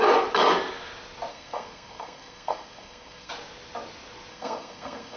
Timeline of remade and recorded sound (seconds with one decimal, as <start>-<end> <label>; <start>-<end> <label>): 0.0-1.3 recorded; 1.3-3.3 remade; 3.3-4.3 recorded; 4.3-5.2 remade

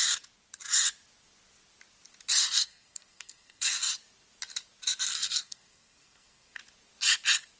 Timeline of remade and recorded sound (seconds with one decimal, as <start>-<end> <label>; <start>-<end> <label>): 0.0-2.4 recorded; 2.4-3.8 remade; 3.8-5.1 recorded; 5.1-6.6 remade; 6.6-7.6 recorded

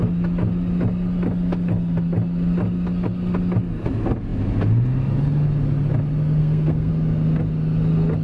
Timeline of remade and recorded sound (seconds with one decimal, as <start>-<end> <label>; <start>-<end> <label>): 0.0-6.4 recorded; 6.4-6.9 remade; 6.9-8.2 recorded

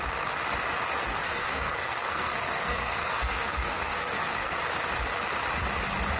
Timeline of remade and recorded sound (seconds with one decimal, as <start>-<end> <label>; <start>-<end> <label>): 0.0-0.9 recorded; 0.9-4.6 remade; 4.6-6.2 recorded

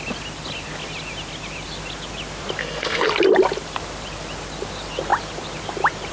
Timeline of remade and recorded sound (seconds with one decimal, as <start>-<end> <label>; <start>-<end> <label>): 0.0-2.6 recorded; 2.6-3.1 remade; 3.1-6.1 recorded

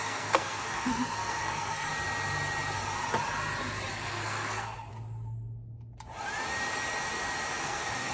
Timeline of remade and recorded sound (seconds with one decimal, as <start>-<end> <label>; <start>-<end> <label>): 0.0-1.9 remade; 1.9-3.9 recorded; 3.9-4.9 remade; 4.9-7.6 recorded; 7.6-8.1 remade